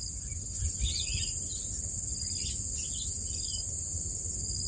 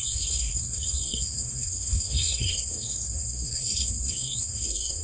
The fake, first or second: second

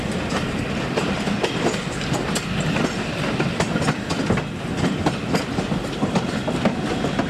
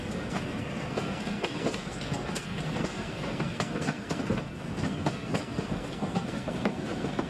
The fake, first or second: second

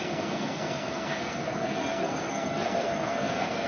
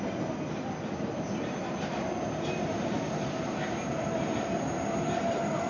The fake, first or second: first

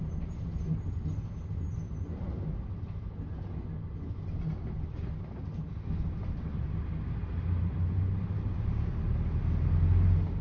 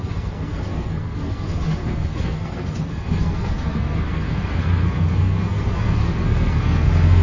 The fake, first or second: second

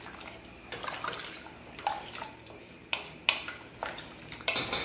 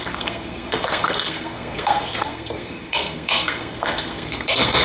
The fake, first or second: second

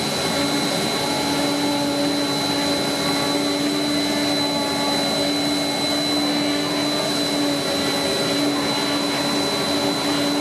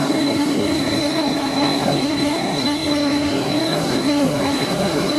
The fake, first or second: second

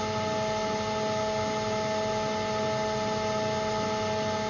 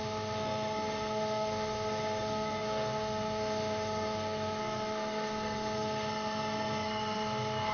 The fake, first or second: second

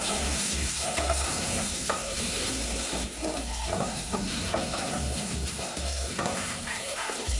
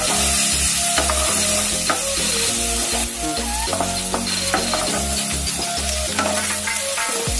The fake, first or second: first